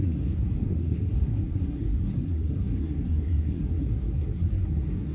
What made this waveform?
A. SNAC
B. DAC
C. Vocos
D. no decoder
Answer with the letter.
A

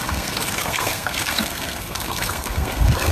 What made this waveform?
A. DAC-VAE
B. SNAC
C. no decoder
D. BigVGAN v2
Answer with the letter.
B